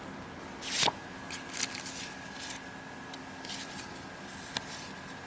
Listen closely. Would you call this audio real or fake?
real